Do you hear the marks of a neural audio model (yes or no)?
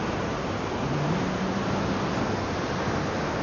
no